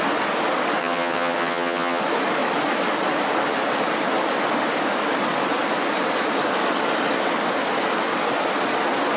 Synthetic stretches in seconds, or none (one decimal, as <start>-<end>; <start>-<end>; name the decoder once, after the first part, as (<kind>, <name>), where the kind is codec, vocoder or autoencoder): 0.8-2.0 (vocoder, HiFi-GAN)